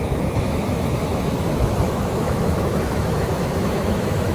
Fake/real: fake